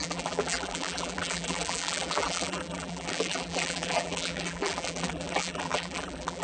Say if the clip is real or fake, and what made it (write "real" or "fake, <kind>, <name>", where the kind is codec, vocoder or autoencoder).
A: fake, vocoder, BigVGAN v2